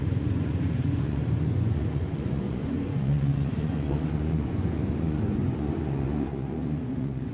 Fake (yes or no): yes